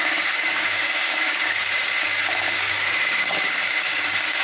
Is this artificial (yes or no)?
yes